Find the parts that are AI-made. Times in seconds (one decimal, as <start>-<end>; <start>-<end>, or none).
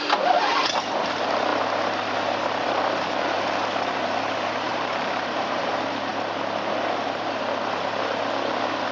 1.5-3.2; 4.7-5.6